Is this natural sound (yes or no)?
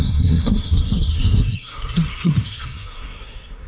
no